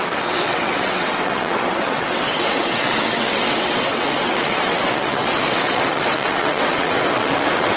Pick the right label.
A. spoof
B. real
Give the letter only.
A